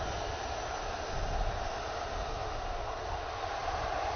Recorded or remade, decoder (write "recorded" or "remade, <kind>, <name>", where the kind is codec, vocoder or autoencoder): recorded